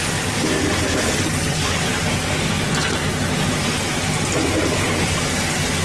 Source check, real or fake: real